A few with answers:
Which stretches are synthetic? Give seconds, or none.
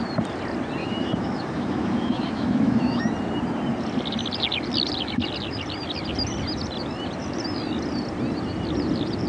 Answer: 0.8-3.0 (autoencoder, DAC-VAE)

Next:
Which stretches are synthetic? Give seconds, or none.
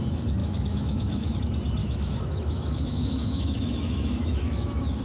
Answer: 0.4-1.4 (autoencoder, DAC-VAE); 1.8-5.0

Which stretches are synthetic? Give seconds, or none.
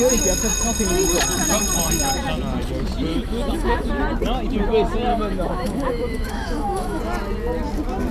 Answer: 3.1-3.9 (autoencoder, DAC-VAE); 5.1-7.0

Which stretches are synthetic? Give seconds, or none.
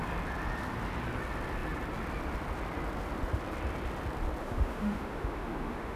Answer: 4.4-6.0 (autoencoder, DAC-VAE)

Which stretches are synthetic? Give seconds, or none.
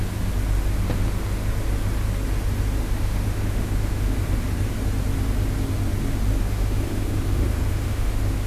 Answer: 2.8-4.1 (autoencoder, DAC-VAE); 6.4-8.5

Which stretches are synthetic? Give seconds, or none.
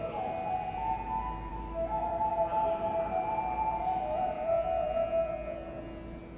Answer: 1.5-2.1 (autoencoder, DAC-VAE)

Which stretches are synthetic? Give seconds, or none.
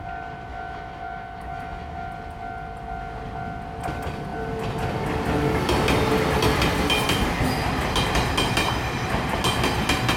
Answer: 0.5-2.1 (autoencoder, DAC-VAE)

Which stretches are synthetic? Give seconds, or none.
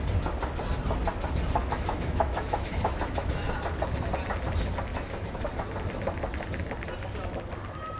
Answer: 1.6-3.5 (autoencoder, DAC-VAE); 4.9-5.5